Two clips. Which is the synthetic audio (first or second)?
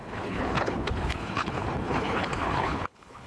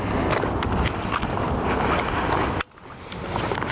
first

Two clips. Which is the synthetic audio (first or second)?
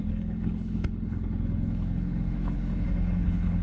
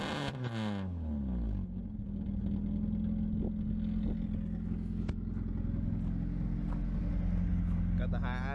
first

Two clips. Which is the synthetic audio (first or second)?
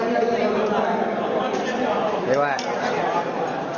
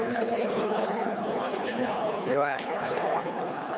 second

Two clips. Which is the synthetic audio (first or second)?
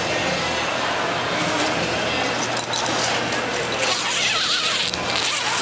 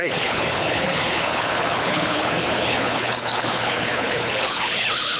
second